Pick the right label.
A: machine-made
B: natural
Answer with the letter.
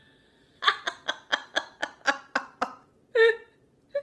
B